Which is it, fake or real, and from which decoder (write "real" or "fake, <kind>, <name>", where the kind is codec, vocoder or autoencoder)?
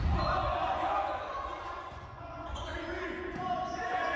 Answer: fake, vocoder, Vocos